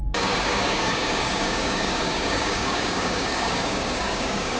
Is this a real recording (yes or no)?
no